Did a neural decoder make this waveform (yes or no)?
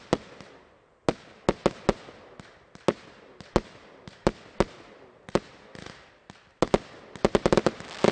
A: no